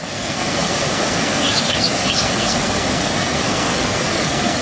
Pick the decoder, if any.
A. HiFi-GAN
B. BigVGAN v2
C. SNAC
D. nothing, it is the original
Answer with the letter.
C